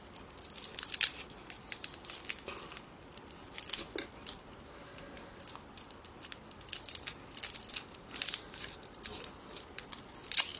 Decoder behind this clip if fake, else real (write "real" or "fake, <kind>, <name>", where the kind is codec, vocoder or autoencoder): real